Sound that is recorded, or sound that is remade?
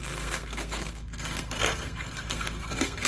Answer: remade